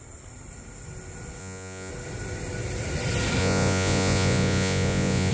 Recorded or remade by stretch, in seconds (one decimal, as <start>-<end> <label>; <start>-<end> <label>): 0.0-1.4 recorded; 1.4-1.9 remade; 1.9-3.4 recorded; 3.4-5.3 remade